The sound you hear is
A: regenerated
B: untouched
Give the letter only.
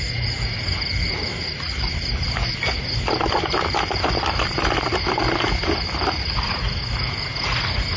B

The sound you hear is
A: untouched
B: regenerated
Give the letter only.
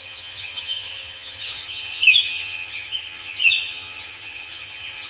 B